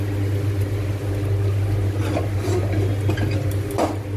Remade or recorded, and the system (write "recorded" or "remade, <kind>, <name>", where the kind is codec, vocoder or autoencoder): recorded